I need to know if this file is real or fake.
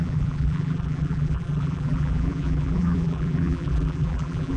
fake